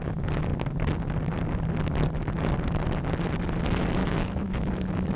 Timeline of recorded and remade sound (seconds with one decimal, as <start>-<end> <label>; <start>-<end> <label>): 0.0-4.0 recorded; 4.0-4.7 remade; 4.7-5.2 recorded